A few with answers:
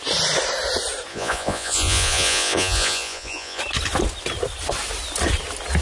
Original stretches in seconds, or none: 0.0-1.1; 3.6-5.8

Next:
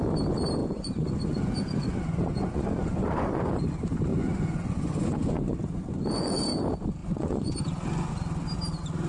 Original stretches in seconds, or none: 0.0-0.6; 3.6-4.1; 6.4-7.0; 7.5-9.1

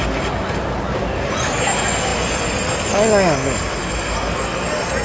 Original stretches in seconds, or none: 0.0-5.0